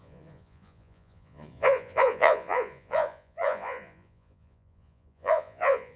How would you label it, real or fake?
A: fake